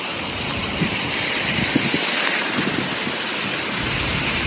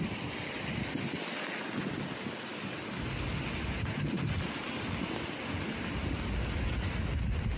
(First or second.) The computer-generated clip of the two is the first